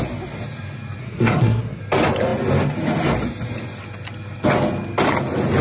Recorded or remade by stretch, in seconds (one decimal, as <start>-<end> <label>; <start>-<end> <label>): 0.0-1.0 recorded; 1.0-1.8 remade; 1.8-5.6 recorded